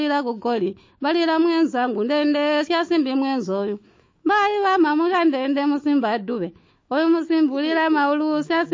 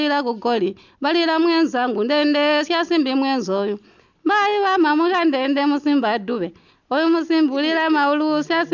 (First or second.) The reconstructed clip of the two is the first